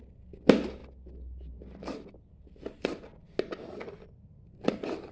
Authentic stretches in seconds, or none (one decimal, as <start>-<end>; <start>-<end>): 0.0-5.1